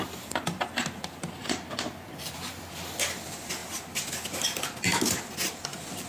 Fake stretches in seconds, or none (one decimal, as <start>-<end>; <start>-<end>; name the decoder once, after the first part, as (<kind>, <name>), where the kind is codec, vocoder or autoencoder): 1.4-2.6 (vocoder, BigVGAN v2)